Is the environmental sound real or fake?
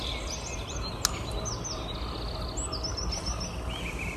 real